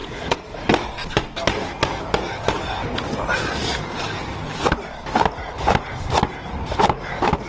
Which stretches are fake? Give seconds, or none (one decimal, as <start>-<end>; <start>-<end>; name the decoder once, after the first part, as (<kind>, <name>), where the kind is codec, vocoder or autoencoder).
none